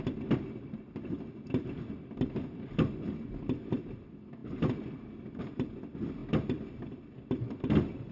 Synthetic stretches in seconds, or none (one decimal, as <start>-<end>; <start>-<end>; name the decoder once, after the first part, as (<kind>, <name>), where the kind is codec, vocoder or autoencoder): none